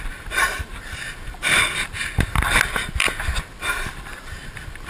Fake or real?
real